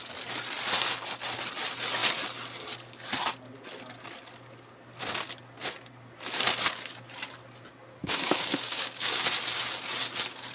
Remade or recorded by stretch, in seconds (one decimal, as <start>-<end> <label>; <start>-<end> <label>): 0.0-8.0 recorded; 8.0-9.2 remade; 9.2-10.5 recorded